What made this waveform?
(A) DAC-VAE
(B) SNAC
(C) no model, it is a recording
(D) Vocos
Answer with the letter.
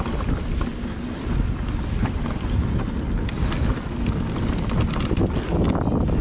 C